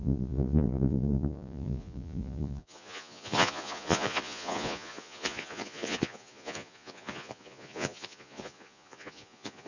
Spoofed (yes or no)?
yes